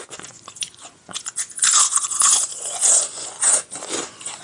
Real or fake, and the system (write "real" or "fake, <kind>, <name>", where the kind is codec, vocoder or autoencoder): fake, vocoder, Vocos